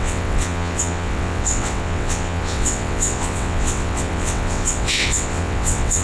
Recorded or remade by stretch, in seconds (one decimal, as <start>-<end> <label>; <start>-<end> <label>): 0.0-6.0 remade